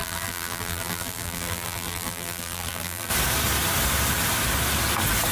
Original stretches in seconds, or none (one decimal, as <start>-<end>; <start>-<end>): 3.1-5.3